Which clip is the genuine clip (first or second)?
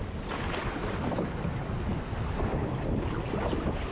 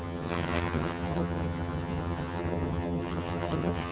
first